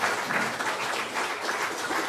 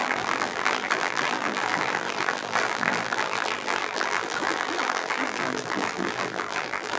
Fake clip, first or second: second